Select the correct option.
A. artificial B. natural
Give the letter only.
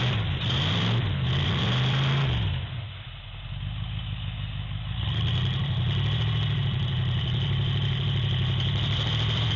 A